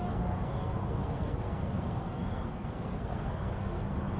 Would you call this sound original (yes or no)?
no